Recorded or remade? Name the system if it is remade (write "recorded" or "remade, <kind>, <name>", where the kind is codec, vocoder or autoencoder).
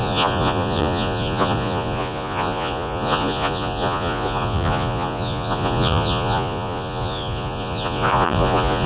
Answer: remade, vocoder, Vocos